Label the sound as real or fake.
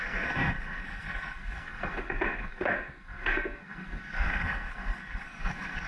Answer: fake